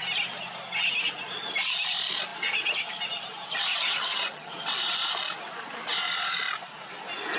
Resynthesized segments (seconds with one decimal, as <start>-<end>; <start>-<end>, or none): 3.7-4.5